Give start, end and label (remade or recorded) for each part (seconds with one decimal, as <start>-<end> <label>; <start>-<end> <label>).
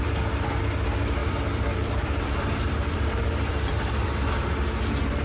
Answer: 0.0-1.2 recorded; 1.2-4.3 remade; 4.3-5.2 recorded